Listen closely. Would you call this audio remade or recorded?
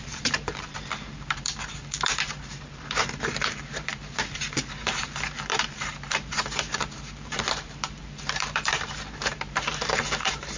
remade